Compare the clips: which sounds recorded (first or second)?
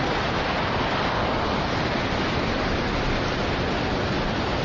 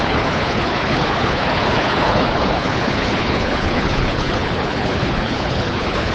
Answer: first